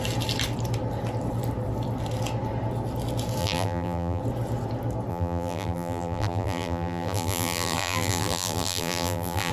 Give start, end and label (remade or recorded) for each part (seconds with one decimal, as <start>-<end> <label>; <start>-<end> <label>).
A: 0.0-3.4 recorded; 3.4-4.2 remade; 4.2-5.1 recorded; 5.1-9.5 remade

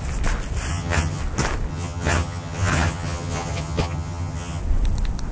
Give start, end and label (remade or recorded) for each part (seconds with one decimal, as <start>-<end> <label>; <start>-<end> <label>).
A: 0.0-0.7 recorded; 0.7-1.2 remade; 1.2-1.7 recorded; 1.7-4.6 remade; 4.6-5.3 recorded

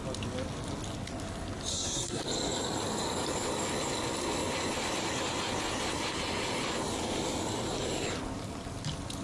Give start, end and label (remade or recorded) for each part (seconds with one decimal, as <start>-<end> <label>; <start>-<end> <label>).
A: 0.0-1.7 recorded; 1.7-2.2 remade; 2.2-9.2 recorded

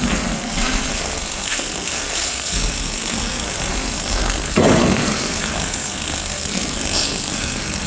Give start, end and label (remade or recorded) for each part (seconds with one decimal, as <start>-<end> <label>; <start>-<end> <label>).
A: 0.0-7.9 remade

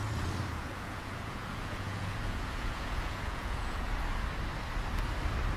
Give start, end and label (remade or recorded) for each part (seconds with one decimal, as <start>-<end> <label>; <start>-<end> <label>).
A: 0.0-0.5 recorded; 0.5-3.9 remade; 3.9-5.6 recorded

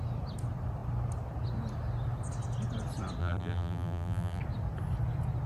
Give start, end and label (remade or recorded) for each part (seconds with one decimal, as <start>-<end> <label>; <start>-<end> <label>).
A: 0.0-3.2 recorded; 3.2-4.4 remade; 4.4-5.5 recorded